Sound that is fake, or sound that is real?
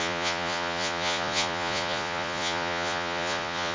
fake